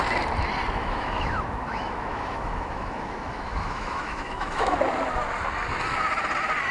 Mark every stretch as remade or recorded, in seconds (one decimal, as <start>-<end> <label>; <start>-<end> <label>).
0.0-0.8 recorded; 0.8-4.8 remade; 4.8-6.7 recorded